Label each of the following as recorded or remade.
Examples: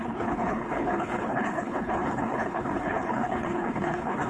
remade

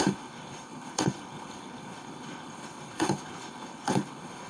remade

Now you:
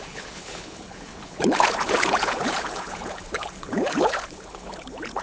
remade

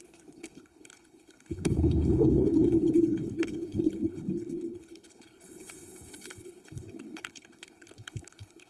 remade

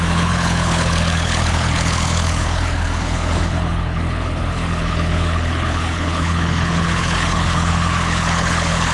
remade